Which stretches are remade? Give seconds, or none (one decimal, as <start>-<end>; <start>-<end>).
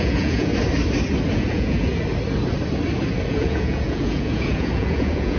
0.0-0.5; 1.3-1.9; 3.3-5.4